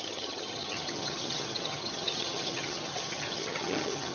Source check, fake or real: fake